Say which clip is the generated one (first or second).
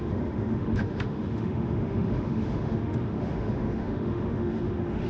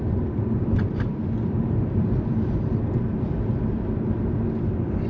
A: first